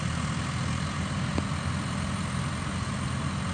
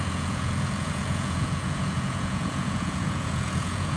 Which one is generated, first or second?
second